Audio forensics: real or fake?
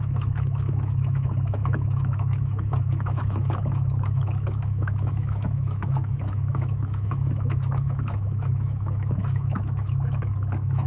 fake